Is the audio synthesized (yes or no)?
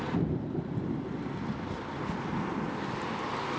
no